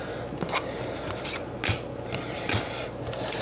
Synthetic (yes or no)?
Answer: no